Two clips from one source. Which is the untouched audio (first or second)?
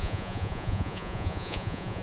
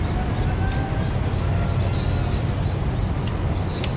second